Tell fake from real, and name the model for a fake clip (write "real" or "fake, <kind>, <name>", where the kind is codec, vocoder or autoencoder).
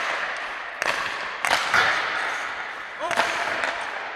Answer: fake, vocoder, BigVGAN v2